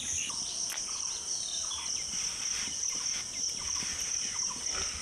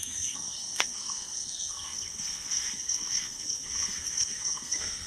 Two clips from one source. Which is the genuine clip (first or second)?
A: first